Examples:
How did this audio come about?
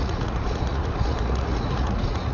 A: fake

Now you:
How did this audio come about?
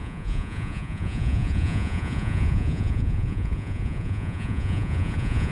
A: fake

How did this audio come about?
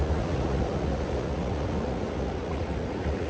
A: fake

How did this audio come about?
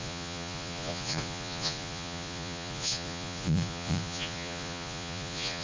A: fake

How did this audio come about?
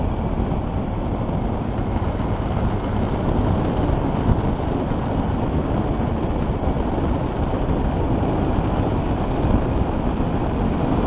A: real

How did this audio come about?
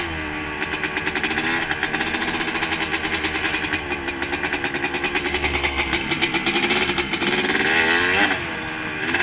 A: real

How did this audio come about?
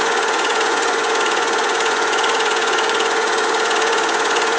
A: fake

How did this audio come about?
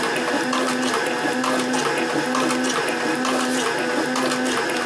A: real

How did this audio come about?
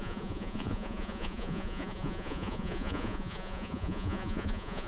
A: fake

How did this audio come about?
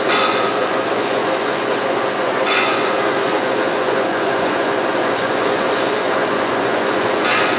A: fake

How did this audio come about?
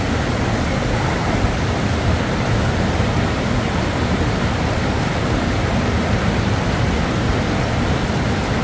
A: real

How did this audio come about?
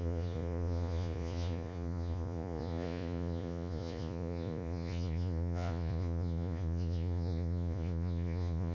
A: fake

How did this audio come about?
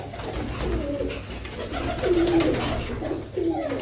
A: real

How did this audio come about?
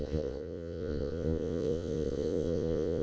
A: fake